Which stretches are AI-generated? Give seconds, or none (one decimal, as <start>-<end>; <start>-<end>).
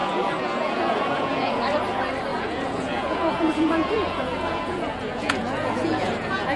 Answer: 0.0-1.6; 2.3-6.6